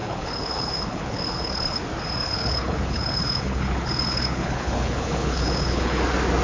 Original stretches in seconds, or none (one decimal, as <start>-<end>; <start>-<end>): 1.8-2.2; 6.0-6.4

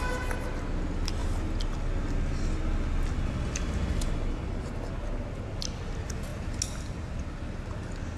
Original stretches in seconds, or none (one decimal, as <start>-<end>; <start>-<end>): 0.0-8.2

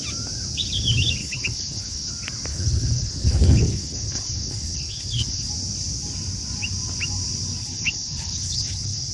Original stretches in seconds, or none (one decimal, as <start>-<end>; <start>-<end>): 0.0-1.2; 2.1-2.5; 5.5-7.6